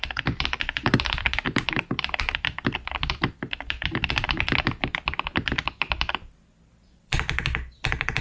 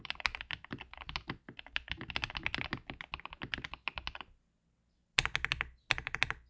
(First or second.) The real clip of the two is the second